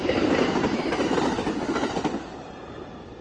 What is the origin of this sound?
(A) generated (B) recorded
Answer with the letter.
B